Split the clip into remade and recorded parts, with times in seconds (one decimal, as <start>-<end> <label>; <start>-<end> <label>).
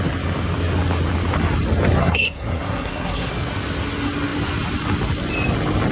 0.0-2.0 recorded; 2.0-3.3 remade; 3.3-5.9 recorded